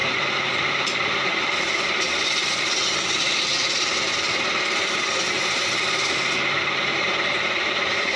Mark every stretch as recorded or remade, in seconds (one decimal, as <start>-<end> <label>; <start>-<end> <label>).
0.0-8.2 recorded